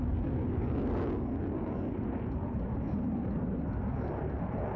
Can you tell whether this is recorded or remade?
recorded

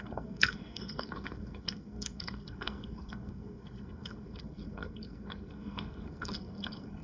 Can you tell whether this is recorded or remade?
remade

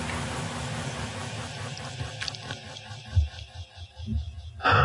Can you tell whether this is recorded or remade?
recorded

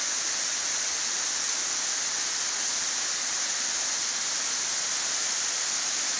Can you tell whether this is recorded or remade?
recorded